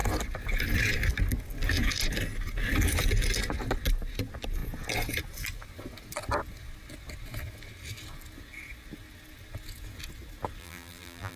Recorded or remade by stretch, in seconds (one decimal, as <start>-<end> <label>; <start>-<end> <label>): 0.0-10.6 recorded; 10.6-11.4 remade